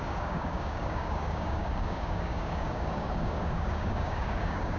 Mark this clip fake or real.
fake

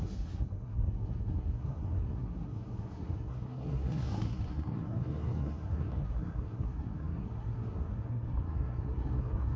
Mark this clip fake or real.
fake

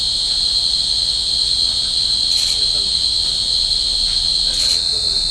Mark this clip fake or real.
real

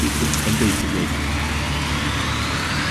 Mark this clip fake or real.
real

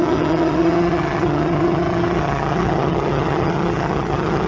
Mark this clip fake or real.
fake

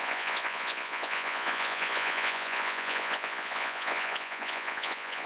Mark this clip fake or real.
fake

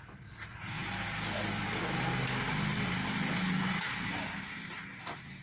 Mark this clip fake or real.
real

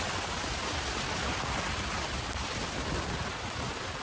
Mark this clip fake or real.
real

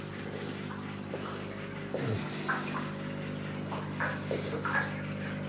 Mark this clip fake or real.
real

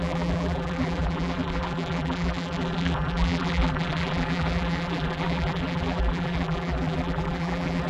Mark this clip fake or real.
fake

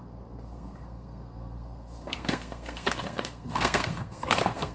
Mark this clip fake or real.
fake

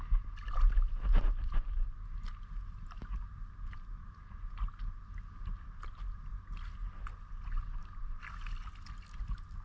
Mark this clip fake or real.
real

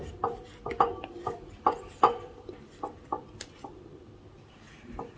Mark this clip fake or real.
real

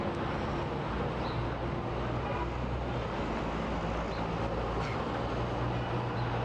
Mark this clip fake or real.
real